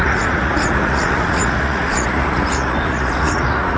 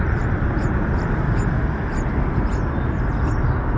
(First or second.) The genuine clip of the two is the second